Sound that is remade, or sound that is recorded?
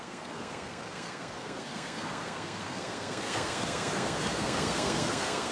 remade